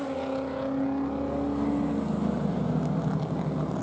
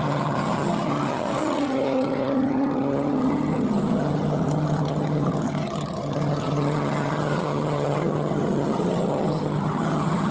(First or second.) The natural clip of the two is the first